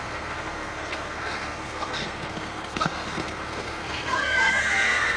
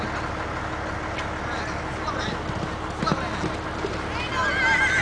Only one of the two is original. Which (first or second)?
second